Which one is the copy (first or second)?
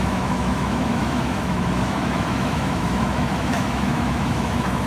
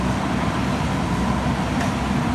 first